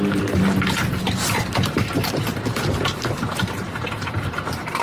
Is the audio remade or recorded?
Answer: remade